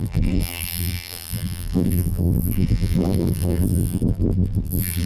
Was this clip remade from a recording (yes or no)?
yes